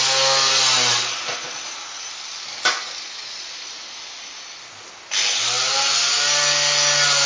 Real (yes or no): yes